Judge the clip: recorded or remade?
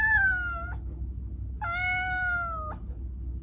recorded